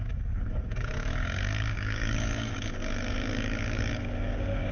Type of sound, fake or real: fake